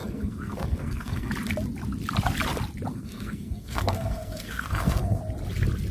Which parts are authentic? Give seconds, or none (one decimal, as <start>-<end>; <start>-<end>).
1.3-2.9; 5.2-5.9